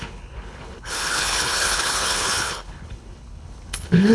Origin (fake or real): fake